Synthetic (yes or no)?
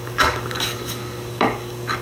yes